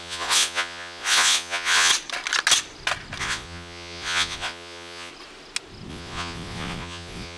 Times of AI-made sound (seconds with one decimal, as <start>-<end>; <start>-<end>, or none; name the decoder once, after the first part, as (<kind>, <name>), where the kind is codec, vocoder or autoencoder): 0.0-1.9 (vocoder, Vocos); 3.2-5.1; 5.9-7.4